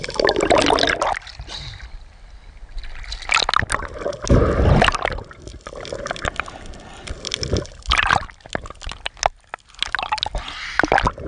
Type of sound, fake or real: real